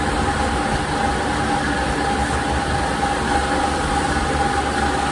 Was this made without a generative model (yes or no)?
yes